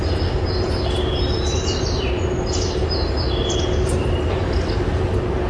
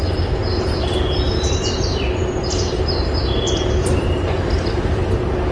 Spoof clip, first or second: second